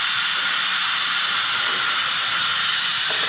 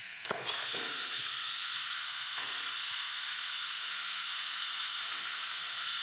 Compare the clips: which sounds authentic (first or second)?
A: first